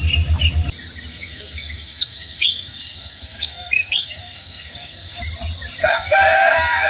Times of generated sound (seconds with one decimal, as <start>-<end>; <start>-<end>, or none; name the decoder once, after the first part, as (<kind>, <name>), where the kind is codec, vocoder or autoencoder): 1.1-5.2 (codec, SNAC); 5.8-6.9

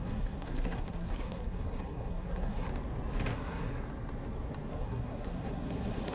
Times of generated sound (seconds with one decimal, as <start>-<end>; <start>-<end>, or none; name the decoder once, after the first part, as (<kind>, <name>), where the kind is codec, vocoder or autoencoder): 0.0-2.7 (codec, SNAC); 3.3-3.7; 4.7-6.1